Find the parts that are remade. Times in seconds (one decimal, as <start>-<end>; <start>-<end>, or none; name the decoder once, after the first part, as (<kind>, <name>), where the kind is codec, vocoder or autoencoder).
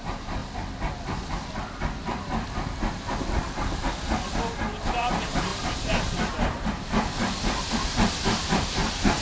0.0-0.4 (vocoder, BigVGAN v2); 4.9-9.2